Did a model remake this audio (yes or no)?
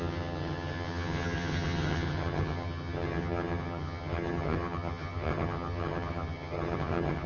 yes